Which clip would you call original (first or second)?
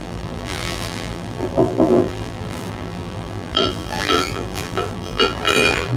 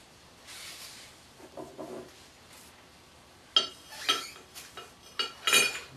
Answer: second